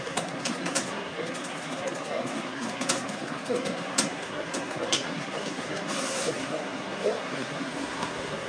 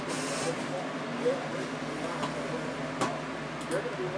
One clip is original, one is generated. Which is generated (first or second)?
first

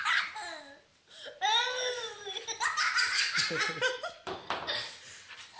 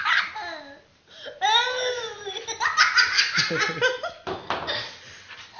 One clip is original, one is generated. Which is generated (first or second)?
first